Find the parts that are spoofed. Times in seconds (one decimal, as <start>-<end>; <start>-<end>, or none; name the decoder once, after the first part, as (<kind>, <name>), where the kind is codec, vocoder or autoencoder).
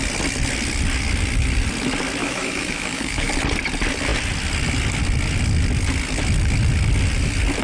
2.2-3.3 (autoencoder, DAC-VAE)